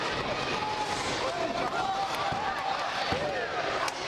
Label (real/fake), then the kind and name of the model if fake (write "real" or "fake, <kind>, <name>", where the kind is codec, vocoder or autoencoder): real